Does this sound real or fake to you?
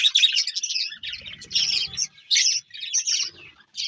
real